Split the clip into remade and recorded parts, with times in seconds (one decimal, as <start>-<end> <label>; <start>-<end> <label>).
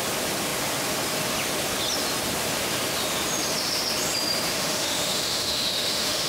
0.0-4.5 recorded; 4.5-6.3 remade